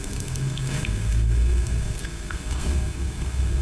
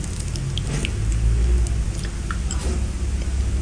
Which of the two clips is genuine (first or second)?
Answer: second